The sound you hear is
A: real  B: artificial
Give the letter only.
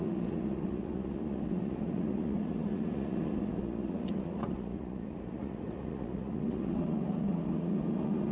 B